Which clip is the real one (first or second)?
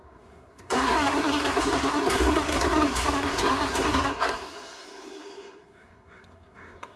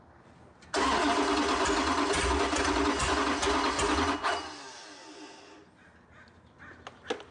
second